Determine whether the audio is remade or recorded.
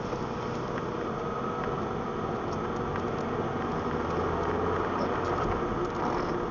recorded